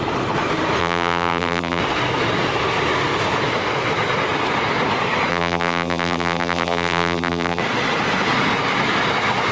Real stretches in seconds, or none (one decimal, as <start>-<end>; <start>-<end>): 0.0-0.8; 1.8-5.3; 7.6-9.5